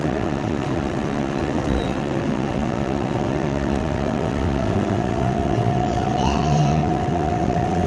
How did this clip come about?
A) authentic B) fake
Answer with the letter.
B